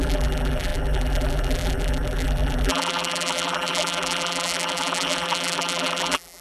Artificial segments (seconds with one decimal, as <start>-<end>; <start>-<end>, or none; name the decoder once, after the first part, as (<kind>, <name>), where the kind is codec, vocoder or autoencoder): 0.0-6.4 (vocoder, BigVGAN v2)